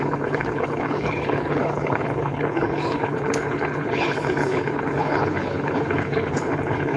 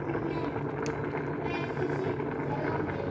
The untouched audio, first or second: second